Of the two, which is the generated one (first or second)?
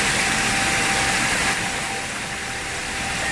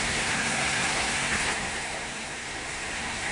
second